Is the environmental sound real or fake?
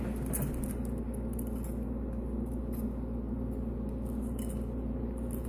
real